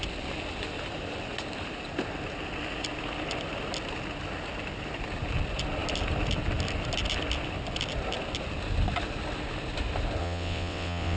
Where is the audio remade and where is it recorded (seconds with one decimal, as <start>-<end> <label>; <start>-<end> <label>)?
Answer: 0.0-10.2 recorded; 10.2-11.2 remade